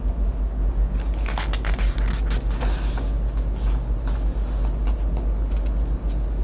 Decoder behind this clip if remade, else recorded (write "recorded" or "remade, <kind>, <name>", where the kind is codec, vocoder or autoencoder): recorded